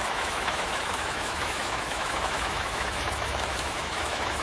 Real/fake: fake